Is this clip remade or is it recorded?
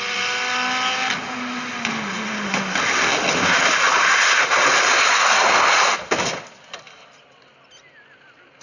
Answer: recorded